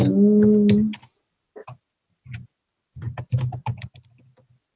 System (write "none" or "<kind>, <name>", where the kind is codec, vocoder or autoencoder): none